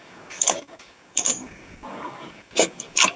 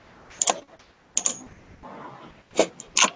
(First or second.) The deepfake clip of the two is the first